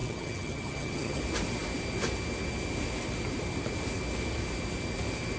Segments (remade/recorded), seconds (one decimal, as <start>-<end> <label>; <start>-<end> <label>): 0.0-1.2 remade; 1.2-5.4 recorded